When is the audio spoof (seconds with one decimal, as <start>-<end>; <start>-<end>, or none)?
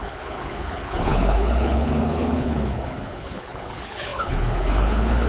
0.0-5.3